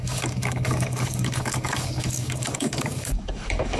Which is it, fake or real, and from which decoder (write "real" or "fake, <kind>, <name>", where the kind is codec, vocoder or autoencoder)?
fake, codec, DAC